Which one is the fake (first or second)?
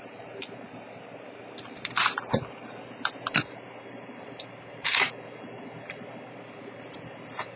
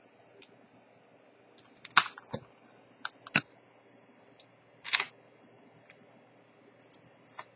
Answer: first